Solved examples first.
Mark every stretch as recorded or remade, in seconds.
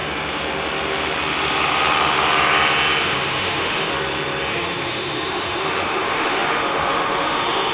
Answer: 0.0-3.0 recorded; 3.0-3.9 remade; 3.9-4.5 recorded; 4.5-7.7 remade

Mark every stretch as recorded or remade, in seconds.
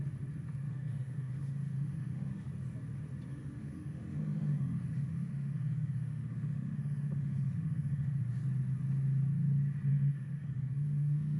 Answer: 0.0-0.7 recorded; 0.7-2.5 remade; 2.5-3.3 recorded; 3.3-8.2 remade; 8.2-9.9 recorded; 9.9-11.4 remade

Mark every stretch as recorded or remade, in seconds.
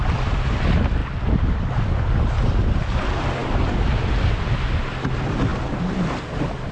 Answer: 0.0-6.7 recorded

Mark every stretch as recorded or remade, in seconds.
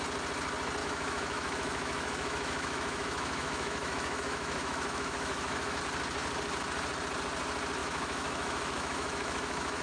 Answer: 0.0-0.8 recorded; 0.8-5.8 remade; 5.8-7.8 recorded; 7.8-9.8 remade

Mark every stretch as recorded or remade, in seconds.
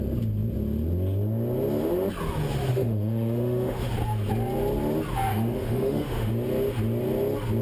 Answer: 0.0-2.7 recorded; 2.7-3.9 remade; 3.9-5.3 recorded; 5.3-6.3 remade; 6.3-7.6 recorded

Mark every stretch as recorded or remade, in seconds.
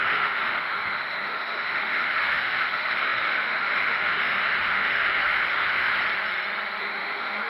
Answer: 0.0-5.9 remade; 5.9-6.8 recorded; 6.8-7.5 remade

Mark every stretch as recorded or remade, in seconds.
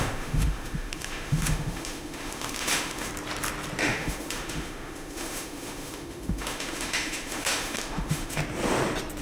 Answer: 0.0-3.1 remade; 3.1-3.8 recorded; 3.8-8.4 remade; 8.4-9.2 recorded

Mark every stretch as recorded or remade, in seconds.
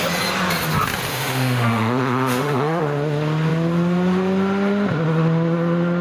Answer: 0.0-1.1 recorded; 1.1-2.8 remade; 2.8-6.0 recorded